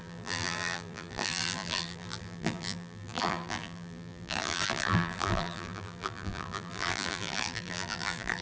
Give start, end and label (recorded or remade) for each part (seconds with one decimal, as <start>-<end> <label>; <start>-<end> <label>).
0.0-8.4 remade